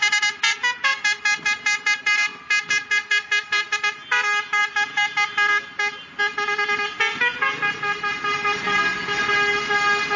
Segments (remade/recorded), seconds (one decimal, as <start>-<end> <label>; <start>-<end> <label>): 0.0-10.2 recorded